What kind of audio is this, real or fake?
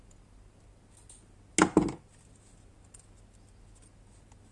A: real